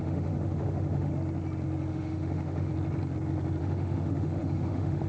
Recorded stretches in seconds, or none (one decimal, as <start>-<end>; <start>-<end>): 1.1-1.9; 2.7-3.6